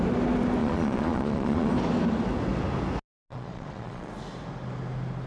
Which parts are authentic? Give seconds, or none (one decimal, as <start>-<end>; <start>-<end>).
0.0-0.6; 1.7-3.3; 4.1-5.3

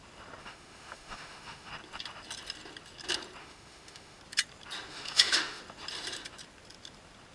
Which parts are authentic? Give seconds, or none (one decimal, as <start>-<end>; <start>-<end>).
0.0-0.4; 1.7-3.4; 4.2-4.9; 5.6-7.3

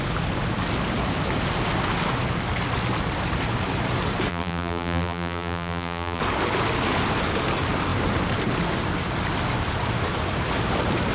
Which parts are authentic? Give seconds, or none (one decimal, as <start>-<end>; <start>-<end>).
0.0-4.3; 6.2-11.1

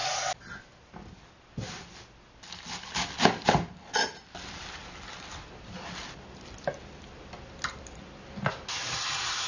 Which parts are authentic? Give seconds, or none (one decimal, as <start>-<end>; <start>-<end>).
0.0-9.5

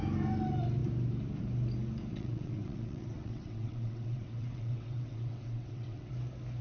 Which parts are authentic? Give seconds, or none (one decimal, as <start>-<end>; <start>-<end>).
0.0-2.1; 6.1-6.6